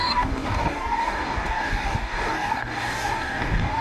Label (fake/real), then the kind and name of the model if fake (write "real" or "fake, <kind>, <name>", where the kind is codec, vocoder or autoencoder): fake, codec, DAC